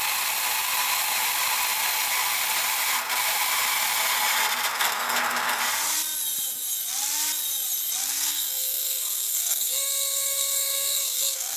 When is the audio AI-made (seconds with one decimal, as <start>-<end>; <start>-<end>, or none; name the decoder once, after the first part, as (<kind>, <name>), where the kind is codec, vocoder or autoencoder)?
4.7-5.6 (codec, SNAC); 8.0-11.6